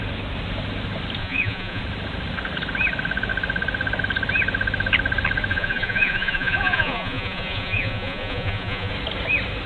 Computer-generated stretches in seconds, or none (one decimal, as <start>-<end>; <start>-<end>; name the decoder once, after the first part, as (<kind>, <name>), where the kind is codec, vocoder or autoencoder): 1.2-1.8 (vocoder, Vocos); 5.5-8.9